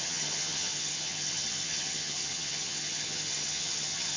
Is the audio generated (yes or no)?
yes